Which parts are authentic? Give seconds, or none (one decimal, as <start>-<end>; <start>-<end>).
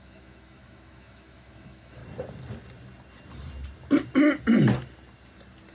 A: 2.0-5.7